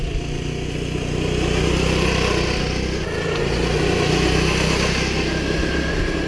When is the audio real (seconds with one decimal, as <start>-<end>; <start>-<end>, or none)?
0.0-6.3